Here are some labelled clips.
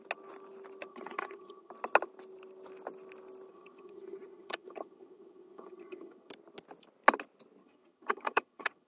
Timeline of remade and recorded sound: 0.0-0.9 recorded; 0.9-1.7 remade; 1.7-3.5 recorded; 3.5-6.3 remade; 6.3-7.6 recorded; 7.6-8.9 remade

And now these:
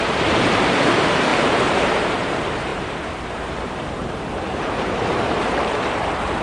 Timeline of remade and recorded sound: 0.0-6.4 remade

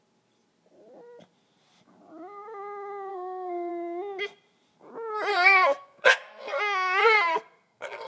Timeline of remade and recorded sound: 0.0-3.1 recorded; 3.1-3.7 remade; 3.7-5.3 recorded; 5.3-6.6 remade; 6.6-7.0 recorded; 7.0-8.1 remade

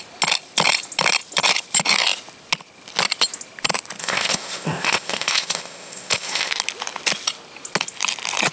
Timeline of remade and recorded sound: 0.0-4.0 recorded; 4.0-6.5 remade; 6.5-8.5 recorded

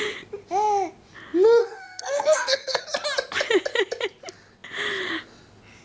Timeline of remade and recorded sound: 0.0-1.6 recorded; 1.6-2.8 remade; 2.8-5.8 recorded

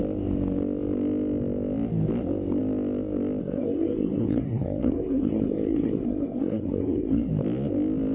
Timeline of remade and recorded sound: 0.0-3.4 recorded; 3.4-7.3 remade; 7.3-8.1 recorded

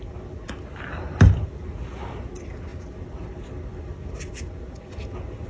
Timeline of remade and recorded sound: 0.0-5.5 recorded